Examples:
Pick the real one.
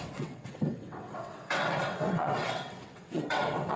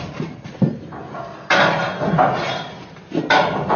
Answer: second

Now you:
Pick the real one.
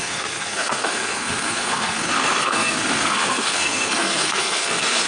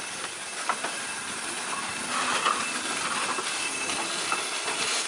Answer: second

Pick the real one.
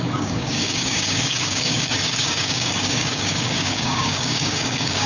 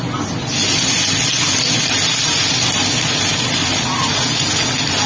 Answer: second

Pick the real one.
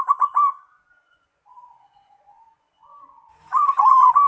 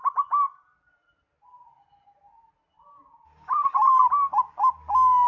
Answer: second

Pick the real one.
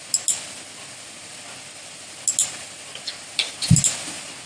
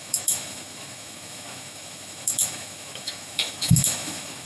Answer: first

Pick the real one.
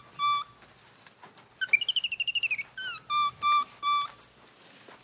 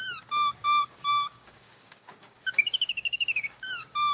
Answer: first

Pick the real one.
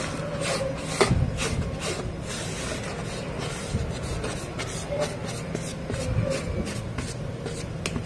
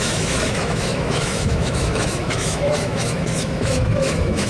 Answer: first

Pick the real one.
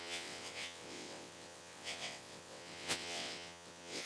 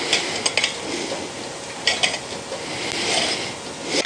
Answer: second